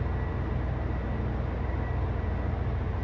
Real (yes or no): yes